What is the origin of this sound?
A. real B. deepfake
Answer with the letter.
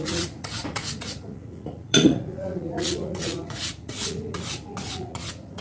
B